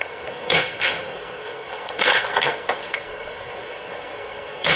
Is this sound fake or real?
fake